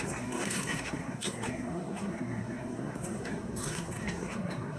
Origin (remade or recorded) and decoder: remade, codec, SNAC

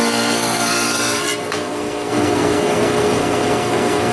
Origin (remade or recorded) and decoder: remade, codec, SNAC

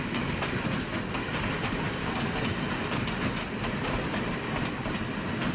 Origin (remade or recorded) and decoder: recorded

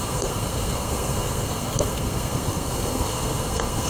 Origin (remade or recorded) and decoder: remade, codec, SNAC